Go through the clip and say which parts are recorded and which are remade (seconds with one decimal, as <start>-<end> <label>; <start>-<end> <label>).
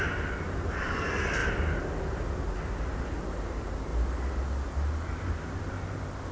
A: 0.0-1.4 remade; 1.4-3.0 recorded; 3.0-3.9 remade; 3.9-5.0 recorded; 5.0-6.3 remade